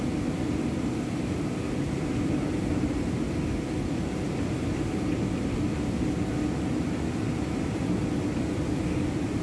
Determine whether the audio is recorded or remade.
recorded